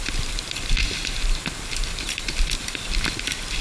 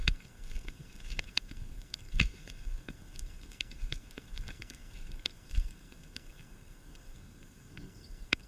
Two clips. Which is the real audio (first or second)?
first